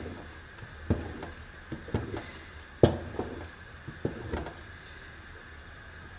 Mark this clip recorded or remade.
recorded